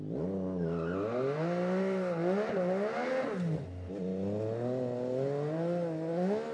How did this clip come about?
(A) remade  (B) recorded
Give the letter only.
B